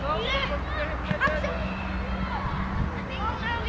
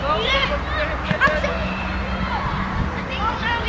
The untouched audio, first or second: first